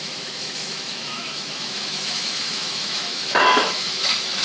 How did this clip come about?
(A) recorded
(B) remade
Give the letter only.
B